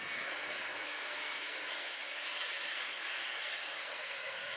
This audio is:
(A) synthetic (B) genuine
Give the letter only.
A